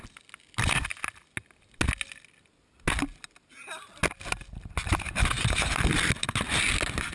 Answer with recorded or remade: recorded